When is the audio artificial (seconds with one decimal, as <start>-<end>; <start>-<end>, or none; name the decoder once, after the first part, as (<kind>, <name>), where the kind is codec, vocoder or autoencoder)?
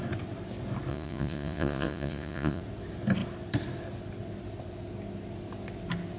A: 0.9-2.6 (vocoder, Vocos)